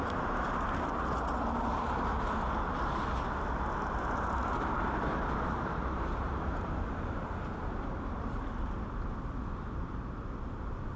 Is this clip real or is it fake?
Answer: real